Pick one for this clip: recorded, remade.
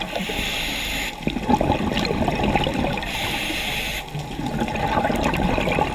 recorded